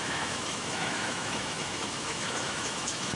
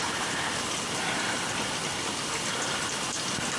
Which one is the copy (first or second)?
first